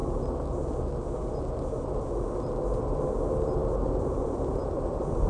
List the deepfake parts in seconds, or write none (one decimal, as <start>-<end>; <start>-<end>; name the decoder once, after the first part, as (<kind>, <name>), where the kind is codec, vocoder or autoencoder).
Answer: 3.6-5.3 (vocoder, BigVGAN v2)